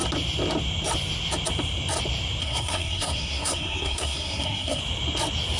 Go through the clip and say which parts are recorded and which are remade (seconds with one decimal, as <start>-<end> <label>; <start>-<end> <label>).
0.0-2.4 recorded; 2.4-4.8 remade; 4.8-5.6 recorded